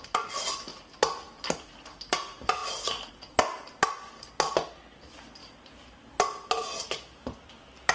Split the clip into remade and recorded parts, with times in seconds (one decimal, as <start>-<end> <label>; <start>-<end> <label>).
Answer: 0.0-7.9 recorded